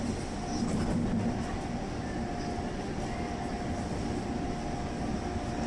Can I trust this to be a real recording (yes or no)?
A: yes